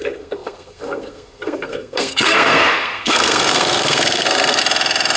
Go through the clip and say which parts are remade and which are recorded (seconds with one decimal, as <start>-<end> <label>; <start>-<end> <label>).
0.0-4.6 remade; 4.6-5.2 recorded